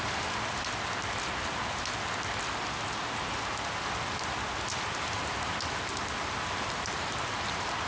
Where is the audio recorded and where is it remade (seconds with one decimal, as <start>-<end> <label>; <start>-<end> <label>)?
0.0-7.9 recorded